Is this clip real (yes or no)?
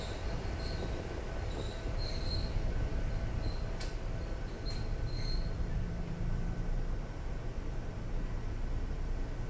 yes